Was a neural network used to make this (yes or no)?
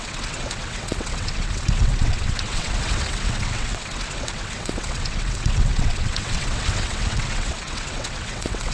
yes